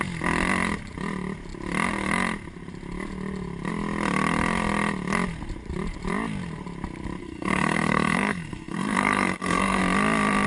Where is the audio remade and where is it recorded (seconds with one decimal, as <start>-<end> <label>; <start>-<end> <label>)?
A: 0.0-7.2 recorded; 7.2-9.8 remade; 9.8-10.5 recorded